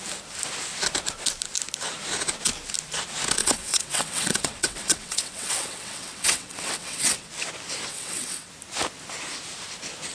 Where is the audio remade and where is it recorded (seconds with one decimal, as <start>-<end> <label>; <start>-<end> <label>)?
0.0-3.4 recorded; 3.4-7.3 remade; 7.3-7.9 recorded; 7.9-8.5 remade; 8.5-10.1 recorded